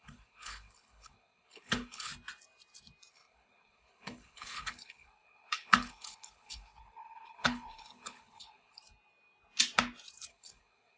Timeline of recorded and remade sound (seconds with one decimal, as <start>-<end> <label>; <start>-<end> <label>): 0.0-2.1 remade; 2.1-3.1 recorded; 3.1-8.8 remade; 8.8-10.3 recorded; 10.3-11.0 remade